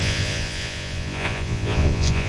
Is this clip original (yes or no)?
no